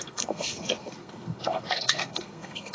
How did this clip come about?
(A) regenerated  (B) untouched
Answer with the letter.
A